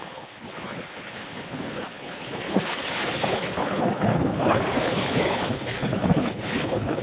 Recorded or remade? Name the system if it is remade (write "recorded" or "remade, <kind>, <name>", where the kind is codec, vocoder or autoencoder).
remade, codec, HILCodec